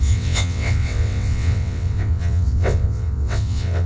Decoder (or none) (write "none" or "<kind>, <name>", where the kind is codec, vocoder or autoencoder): vocoder, WaveNeXt